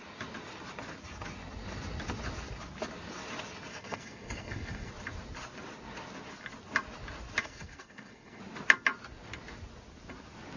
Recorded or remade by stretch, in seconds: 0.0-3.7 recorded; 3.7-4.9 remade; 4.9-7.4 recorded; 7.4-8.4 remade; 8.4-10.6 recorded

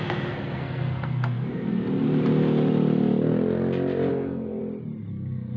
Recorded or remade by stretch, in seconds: 0.0-1.7 remade; 1.7-4.1 recorded; 4.1-4.6 remade; 4.6-5.1 recorded; 5.1-5.6 remade

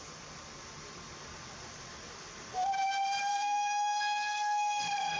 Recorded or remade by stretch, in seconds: 0.0-3.3 recorded; 3.3-5.2 remade

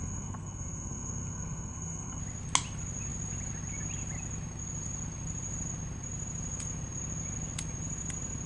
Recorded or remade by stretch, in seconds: 0.0-2.2 remade; 2.2-8.5 recorded

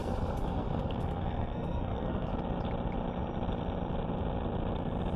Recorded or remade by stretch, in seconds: 0.0-2.3 remade; 2.3-5.2 recorded

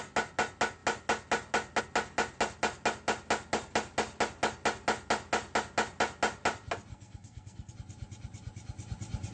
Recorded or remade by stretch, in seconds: 0.0-6.9 recorded; 6.9-7.7 remade; 7.7-9.3 recorded

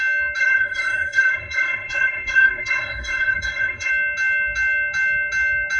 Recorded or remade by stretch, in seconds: 0.0-0.4 recorded; 0.4-3.9 remade; 3.9-5.8 recorded

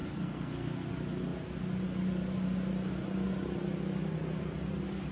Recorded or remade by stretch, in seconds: 0.0-0.9 remade; 0.9-5.1 recorded